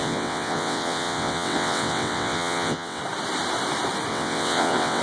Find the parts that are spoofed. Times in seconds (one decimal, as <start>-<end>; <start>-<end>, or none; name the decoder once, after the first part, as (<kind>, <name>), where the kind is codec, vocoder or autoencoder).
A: 0.0-3.0 (vocoder, WaveNeXt); 4.1-5.0